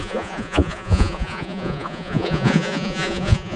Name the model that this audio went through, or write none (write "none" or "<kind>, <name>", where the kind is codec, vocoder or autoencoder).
vocoder, Vocos